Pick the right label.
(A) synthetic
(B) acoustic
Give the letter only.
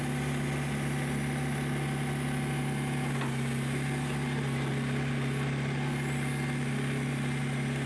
B